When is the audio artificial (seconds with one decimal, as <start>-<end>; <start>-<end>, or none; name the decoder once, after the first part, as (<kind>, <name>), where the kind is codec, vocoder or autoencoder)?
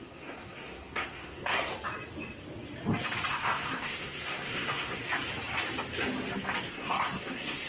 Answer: 0.0-1.7 (codec, SNAC); 3.3-5.0; 6.7-7.7